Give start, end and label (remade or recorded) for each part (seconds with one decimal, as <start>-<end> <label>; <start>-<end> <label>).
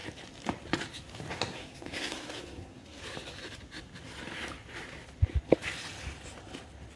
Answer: 0.0-1.3 recorded; 1.3-3.0 remade; 3.0-7.0 recorded